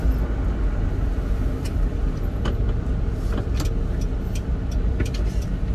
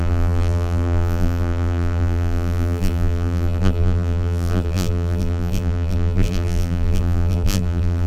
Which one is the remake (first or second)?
second